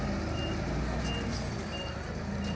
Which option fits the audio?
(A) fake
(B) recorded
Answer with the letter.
B